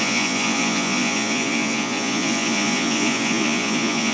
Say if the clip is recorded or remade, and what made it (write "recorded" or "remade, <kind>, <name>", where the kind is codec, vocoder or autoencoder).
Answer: remade, vocoder, Vocos